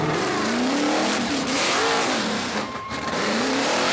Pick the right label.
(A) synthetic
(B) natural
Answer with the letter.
A